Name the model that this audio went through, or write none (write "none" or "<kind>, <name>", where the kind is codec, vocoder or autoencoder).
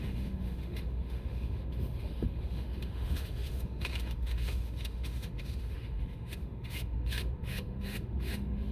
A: autoencoder, DAC-VAE